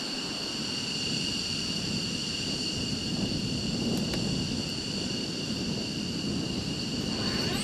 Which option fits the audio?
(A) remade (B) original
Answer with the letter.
B